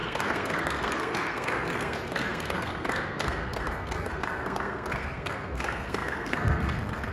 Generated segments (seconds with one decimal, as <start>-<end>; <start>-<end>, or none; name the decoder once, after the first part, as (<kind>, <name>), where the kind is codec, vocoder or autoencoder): 0.0-7.1 (codec, SNAC)